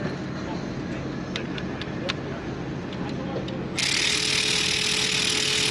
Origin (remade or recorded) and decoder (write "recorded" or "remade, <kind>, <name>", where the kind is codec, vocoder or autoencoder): recorded